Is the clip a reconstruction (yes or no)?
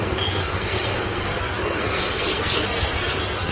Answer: yes